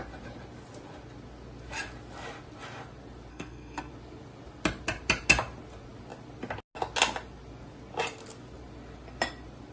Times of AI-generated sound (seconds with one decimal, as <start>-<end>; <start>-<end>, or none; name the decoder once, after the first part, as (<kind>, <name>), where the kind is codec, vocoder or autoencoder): 3.3-3.9 (codec, SNAC)